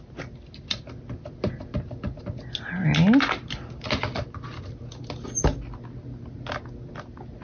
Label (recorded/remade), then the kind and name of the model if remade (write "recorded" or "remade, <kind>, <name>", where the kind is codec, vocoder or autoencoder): recorded